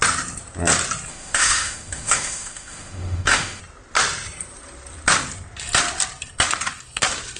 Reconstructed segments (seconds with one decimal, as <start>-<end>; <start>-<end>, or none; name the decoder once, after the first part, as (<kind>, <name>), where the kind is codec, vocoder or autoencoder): 1.1-3.6 (autoencoder, DAC-VAE)